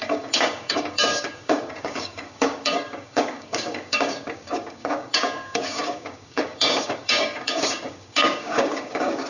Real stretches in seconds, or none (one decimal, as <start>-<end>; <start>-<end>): none